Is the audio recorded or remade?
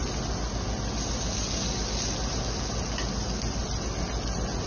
recorded